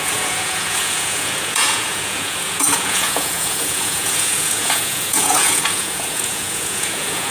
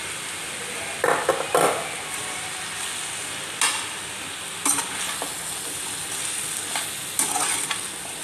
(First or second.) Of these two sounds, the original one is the second